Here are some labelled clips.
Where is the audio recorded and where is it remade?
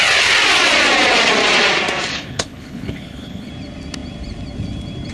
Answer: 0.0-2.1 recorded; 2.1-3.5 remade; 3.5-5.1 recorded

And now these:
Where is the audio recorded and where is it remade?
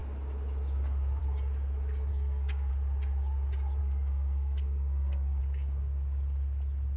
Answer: 0.0-2.1 recorded; 2.1-2.7 remade; 2.7-3.8 recorded; 3.8-5.4 remade; 5.4-7.0 recorded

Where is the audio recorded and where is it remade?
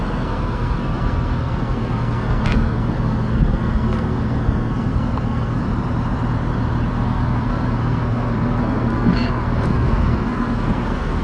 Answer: 0.0-5.6 remade; 5.6-6.9 recorded; 6.9-11.2 remade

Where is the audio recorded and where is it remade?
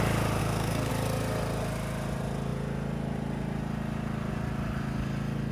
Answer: 0.0-0.4 recorded; 0.4-0.9 remade; 0.9-5.5 recorded